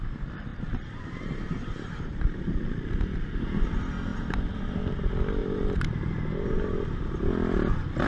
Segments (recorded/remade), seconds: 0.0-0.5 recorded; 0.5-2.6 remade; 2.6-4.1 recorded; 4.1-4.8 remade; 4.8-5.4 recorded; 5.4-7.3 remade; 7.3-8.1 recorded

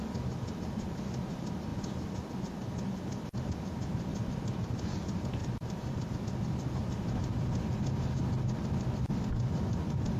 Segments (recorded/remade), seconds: 0.0-4.1 recorded; 4.1-4.9 remade; 4.9-5.4 recorded; 5.4-6.1 remade; 6.1-6.8 recorded; 6.8-8.2 remade; 8.2-10.2 recorded

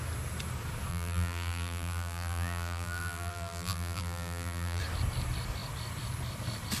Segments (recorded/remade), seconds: 0.0-0.9 recorded; 0.9-4.8 remade; 4.8-6.8 recorded

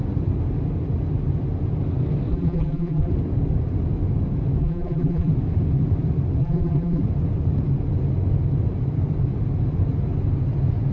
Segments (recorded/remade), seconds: 0.0-2.3 recorded; 2.3-3.1 remade; 3.1-4.6 recorded; 4.6-5.3 remade; 5.3-6.4 recorded; 6.4-7.0 remade; 7.0-10.9 recorded

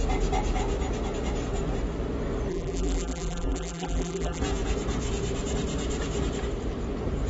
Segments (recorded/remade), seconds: 0.0-2.5 recorded; 2.5-4.4 remade; 4.4-7.3 recorded